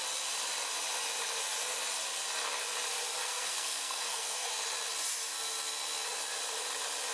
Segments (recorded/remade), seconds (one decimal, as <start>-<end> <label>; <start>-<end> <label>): 0.0-3.2 recorded; 3.2-4.5 remade; 4.5-7.1 recorded